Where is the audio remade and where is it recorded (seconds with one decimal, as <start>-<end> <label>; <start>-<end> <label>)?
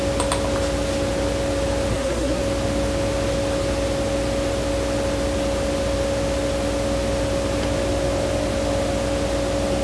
0.0-1.9 recorded; 1.9-2.4 remade; 2.4-9.8 recorded